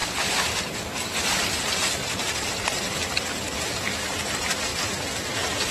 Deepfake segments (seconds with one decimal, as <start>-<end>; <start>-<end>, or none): 0.6-5.7